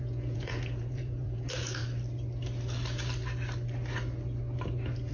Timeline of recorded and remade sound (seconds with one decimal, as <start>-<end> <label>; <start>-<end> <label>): 0.0-1.8 remade; 1.8-5.1 recorded